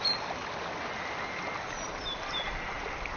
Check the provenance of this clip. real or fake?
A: real